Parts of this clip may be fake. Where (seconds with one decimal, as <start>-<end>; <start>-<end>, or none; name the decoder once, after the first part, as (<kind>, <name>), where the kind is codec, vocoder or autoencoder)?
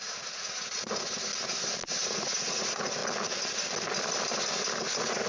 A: 0.0-1.3 (vocoder, Vocos); 1.9-3.0; 4.8-5.3